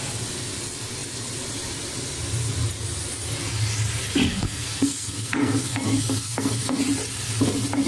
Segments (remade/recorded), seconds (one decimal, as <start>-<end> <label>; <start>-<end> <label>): 0.0-4.3 recorded; 4.3-6.8 remade; 6.8-7.9 recorded

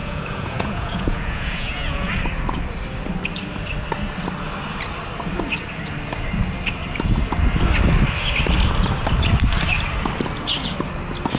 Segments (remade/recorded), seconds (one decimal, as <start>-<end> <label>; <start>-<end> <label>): 0.0-2.1 remade; 2.1-11.4 recorded

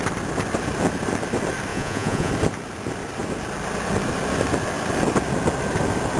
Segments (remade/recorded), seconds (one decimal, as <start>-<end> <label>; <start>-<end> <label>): 0.0-1.7 recorded; 1.7-2.3 remade; 2.3-6.2 recorded

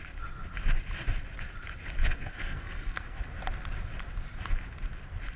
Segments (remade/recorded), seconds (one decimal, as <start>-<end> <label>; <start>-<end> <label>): 0.0-2.0 recorded; 2.0-3.2 remade; 3.2-5.4 recorded

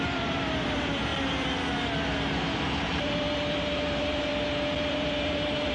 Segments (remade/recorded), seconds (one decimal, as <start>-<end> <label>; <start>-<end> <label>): 0.0-1.1 remade; 1.1-2.8 recorded; 2.8-4.3 remade; 4.3-4.9 recorded; 4.9-5.7 remade

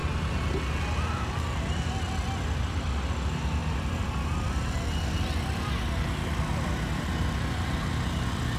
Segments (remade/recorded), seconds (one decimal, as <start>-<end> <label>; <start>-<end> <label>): 0.0-8.6 recorded